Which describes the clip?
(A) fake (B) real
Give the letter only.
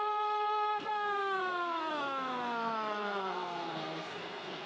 A